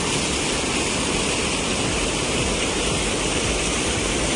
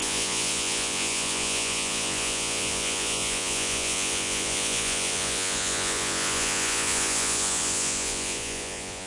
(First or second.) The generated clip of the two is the second